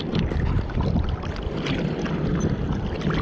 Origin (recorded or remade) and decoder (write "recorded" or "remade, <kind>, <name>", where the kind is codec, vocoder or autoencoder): recorded